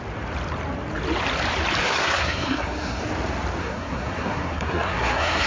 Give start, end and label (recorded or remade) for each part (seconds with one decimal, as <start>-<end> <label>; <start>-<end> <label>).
0.0-1.8 recorded; 1.8-3.0 remade; 3.0-3.6 recorded; 3.6-5.5 remade